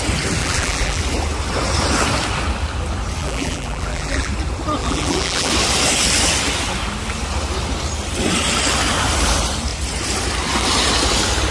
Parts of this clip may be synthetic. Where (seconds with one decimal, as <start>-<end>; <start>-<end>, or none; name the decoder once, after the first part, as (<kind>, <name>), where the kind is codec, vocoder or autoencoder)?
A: 0.4-1.0 (vocoder, BigVGAN v2); 3.2-4.3; 4.8-5.5